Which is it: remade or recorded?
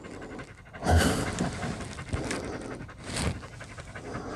recorded